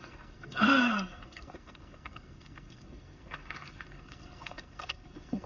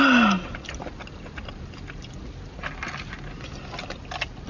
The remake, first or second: first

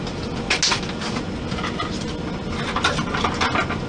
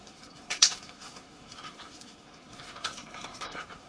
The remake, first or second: second